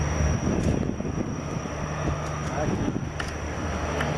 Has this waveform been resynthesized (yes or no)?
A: no